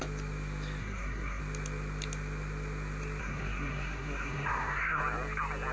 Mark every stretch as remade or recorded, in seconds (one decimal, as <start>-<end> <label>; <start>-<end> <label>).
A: 0.0-0.8 recorded; 0.8-1.4 remade; 1.4-3.2 recorded; 3.2-5.0 remade; 5.0-5.7 recorded